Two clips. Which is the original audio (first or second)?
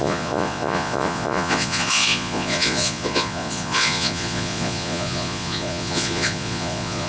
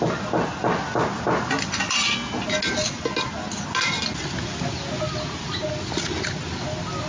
second